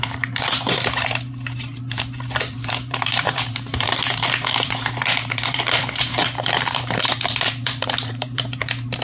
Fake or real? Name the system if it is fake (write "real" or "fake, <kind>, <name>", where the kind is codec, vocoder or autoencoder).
fake, vocoder, BigVGAN v2